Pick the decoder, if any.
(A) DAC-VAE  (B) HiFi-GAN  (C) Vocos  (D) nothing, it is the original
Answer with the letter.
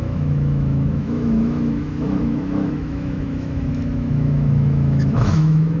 A